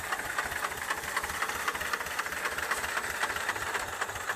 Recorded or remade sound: recorded